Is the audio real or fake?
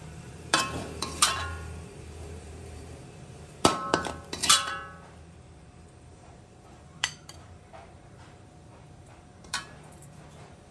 fake